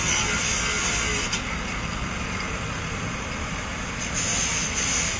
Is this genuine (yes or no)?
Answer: yes